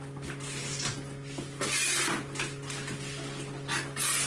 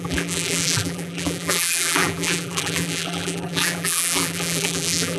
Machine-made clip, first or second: second